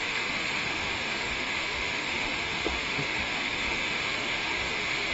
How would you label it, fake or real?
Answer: fake